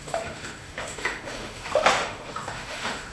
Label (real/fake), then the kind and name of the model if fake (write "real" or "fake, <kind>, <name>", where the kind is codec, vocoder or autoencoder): fake, autoencoder, DAC-VAE